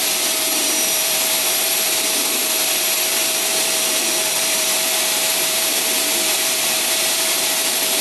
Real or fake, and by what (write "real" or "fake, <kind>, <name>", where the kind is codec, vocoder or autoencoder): fake, vocoder, BigVGAN v2